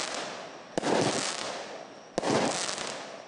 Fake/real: real